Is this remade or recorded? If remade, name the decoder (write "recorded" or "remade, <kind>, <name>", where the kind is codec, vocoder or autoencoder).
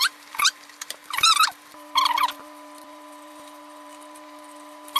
remade, vocoder, BigVGAN v2